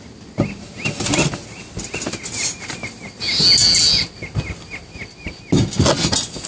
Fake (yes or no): no